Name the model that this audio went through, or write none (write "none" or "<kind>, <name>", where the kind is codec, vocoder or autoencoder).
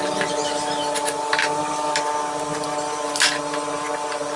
none